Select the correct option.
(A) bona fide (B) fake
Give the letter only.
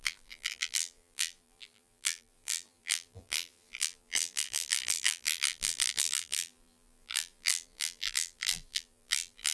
B